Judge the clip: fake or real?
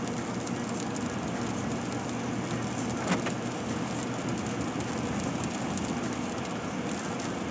real